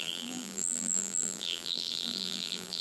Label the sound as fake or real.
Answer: fake